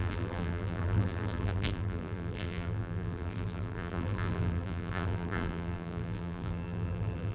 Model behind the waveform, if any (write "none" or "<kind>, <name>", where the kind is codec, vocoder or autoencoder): vocoder, BigVGAN v2